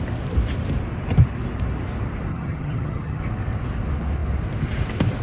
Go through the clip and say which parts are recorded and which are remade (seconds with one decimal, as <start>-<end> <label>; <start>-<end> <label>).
0.0-2.3 recorded; 2.3-3.2 remade; 3.2-5.2 recorded

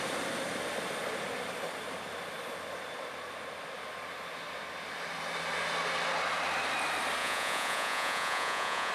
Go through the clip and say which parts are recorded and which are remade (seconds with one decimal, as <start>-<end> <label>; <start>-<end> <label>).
0.0-7.2 recorded; 7.2-8.9 remade

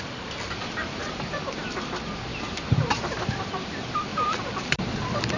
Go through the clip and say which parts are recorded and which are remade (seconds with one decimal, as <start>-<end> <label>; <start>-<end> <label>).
0.0-0.8 recorded; 0.8-1.4 remade; 1.4-2.3 recorded; 2.3-3.5 remade; 3.5-4.1 recorded; 4.1-5.4 remade

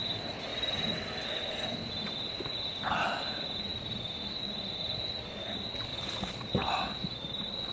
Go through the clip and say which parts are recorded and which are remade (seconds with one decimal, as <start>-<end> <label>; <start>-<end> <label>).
0.0-5.9 recorded; 5.9-6.5 remade; 6.5-7.7 recorded

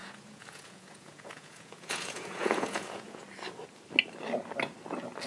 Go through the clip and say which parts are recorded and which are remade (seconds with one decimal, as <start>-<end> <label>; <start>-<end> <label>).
0.0-3.2 remade; 3.2-5.3 recorded

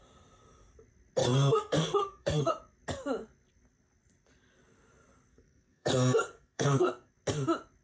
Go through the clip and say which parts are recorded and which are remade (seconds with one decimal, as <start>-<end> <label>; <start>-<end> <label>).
0.0-1.2 recorded; 1.2-2.5 remade; 2.5-5.3 recorded; 5.3-7.1 remade; 7.1-7.8 recorded